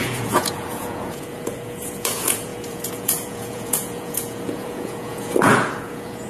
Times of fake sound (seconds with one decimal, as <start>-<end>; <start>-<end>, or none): 0.0-6.3